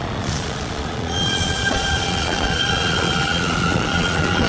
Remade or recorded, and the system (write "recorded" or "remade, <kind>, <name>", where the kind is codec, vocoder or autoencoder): remade, vocoder, Vocos